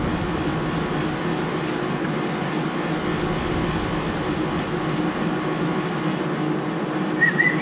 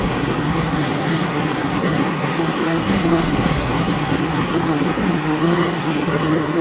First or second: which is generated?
second